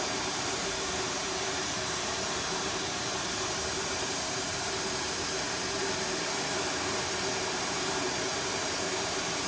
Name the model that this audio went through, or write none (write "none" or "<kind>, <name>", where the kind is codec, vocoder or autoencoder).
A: vocoder, BigVGAN v2